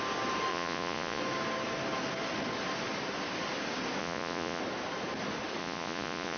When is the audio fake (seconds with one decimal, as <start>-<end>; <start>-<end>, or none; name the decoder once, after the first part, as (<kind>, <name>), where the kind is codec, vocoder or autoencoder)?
0.5-1.2 (vocoder, Vocos); 4.0-4.6; 5.6-6.4